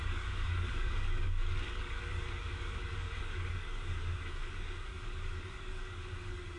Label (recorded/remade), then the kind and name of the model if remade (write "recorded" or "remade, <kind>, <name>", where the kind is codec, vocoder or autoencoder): remade, codec, DAC